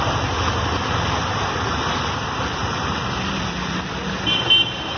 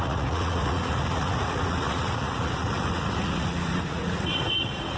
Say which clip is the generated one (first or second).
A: second